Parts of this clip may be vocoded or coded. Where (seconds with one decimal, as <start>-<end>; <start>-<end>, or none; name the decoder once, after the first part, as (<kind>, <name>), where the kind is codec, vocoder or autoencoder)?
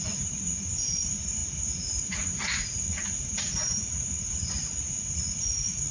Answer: 0.0-5.9 (vocoder, Vocos)